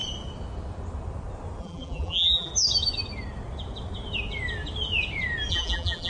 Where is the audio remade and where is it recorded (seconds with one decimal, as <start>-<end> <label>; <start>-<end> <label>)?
0.0-1.6 recorded; 1.6-2.5 remade; 2.5-5.5 recorded; 5.5-6.1 remade